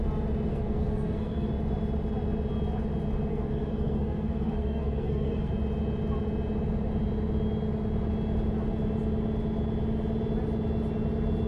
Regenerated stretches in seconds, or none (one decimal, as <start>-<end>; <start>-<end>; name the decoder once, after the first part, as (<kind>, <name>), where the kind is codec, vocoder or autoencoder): 0.5-1.5 (codec, SNAC); 3.3-5.5